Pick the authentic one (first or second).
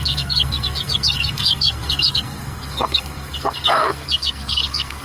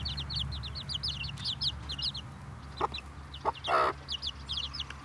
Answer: second